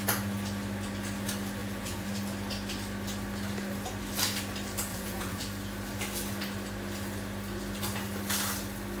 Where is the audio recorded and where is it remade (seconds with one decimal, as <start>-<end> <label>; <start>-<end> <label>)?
0.0-1.6 recorded; 1.6-2.1 remade; 2.1-4.9 recorded; 4.9-5.4 remade; 5.4-9.0 recorded